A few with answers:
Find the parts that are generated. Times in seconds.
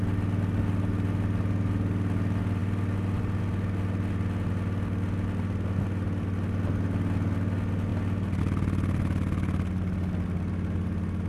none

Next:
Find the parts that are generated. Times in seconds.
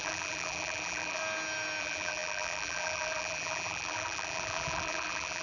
0.0-1.2 (vocoder, BigVGAN v2); 1.8-5.4